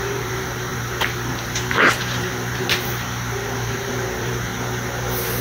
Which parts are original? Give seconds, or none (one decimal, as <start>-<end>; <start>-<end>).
4.5-5.4